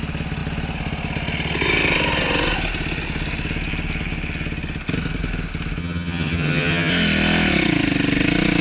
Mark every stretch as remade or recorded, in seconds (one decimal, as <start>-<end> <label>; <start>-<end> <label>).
0.0-5.8 recorded; 5.8-6.9 remade; 6.9-8.6 recorded